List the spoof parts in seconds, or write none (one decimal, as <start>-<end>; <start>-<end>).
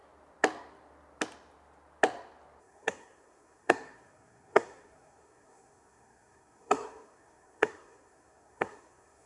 2.6-9.3